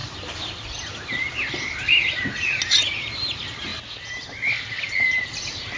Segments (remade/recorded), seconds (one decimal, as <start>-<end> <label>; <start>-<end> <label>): 0.0-1.1 remade; 1.1-5.8 recorded